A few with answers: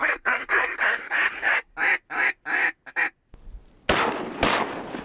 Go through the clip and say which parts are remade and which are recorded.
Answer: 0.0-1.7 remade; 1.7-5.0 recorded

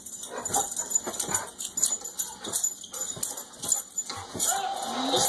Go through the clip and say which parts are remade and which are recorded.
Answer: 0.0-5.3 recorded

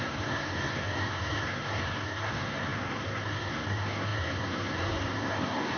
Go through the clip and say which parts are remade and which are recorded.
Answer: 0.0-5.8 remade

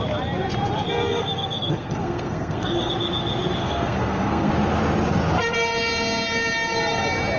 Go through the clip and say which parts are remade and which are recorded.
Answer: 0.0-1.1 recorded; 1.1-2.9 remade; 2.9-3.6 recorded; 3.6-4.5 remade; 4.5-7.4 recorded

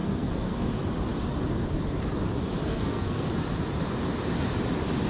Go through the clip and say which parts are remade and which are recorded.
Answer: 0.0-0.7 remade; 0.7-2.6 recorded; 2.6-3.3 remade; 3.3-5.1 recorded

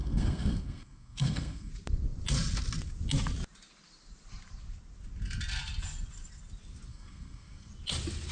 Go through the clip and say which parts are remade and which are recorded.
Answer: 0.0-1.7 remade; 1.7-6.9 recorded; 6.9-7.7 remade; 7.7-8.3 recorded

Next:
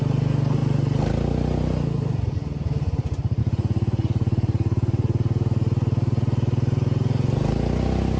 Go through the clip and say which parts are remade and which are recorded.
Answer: 0.0-8.2 recorded